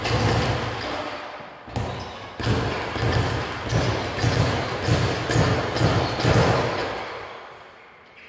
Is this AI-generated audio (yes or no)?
no